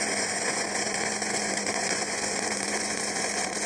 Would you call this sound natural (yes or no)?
no